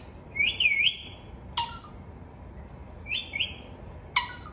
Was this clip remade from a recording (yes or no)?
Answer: no